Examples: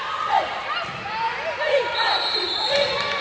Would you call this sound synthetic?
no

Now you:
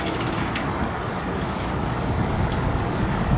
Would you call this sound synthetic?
yes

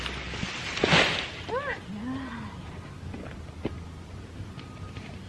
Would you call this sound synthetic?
no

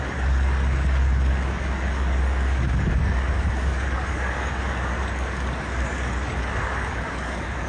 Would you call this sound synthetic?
yes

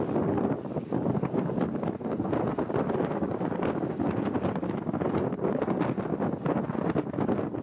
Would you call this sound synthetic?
no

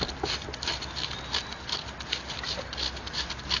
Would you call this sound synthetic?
no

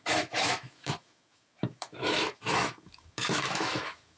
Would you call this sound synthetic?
yes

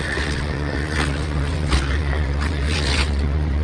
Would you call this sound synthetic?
yes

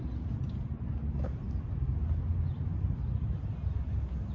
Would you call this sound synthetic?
no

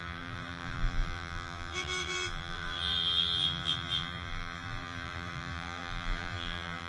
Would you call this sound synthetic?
yes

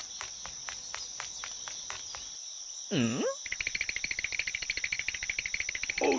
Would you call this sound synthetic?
no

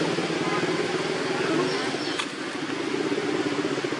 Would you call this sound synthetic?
no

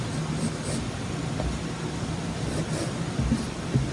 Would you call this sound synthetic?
no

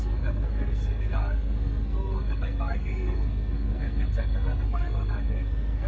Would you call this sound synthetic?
yes